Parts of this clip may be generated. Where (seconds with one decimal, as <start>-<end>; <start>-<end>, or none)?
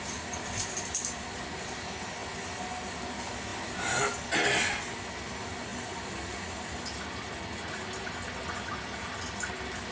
none